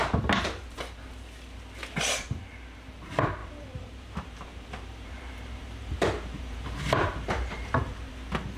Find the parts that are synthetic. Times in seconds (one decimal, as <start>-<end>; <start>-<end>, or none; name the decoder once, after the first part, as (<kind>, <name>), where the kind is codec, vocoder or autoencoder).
3.4-8.1 (vocoder, BigVGAN v2)